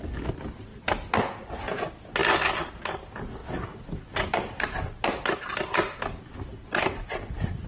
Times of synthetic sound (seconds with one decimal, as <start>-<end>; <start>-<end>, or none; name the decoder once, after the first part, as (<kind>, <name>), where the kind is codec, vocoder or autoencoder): none